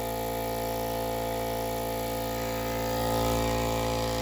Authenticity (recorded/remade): recorded